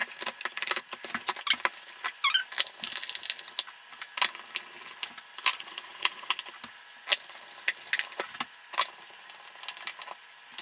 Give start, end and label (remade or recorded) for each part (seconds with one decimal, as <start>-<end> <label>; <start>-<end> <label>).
0.0-5.5 recorded; 5.5-6.3 remade; 6.3-10.6 recorded